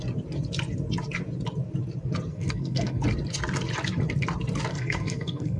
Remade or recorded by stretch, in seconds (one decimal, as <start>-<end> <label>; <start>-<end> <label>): 0.0-2.3 recorded; 2.3-3.0 remade; 3.0-4.7 recorded; 4.7-5.6 remade